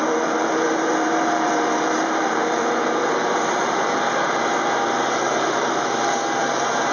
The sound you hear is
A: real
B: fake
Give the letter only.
B